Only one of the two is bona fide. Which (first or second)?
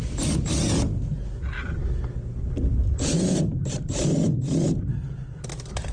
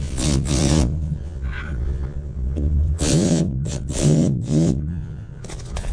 first